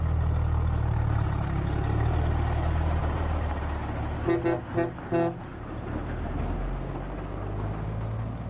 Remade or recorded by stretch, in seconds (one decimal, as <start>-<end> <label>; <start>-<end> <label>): 0.0-3.0 recorded; 3.0-3.6 remade; 3.6-5.5 recorded; 5.5-6.4 remade; 6.4-8.5 recorded